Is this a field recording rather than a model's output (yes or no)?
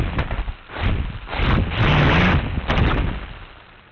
yes